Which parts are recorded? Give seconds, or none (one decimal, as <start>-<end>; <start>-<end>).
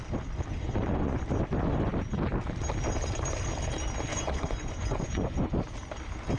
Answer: 0.0-0.5; 1.2-4.1; 5.5-6.4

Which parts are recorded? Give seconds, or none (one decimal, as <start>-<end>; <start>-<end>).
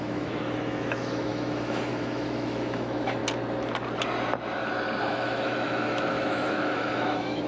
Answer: 3.2-5.0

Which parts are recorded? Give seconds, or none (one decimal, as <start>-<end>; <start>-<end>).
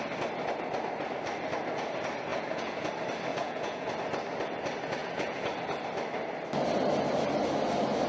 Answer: 0.0-2.3; 2.9-3.3; 3.9-5.0; 5.5-8.1